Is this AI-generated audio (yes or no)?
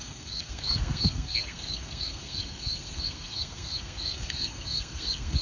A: yes